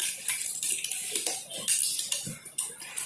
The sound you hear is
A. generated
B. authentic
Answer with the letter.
B